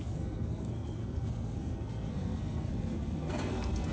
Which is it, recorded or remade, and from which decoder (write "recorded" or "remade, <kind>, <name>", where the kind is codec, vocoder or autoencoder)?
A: remade, codec, SNAC